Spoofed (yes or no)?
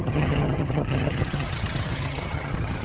yes